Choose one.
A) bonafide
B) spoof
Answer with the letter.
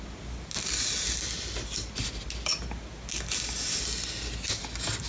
A